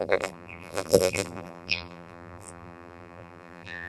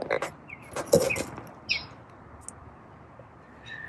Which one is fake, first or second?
first